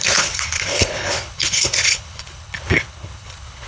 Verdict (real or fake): fake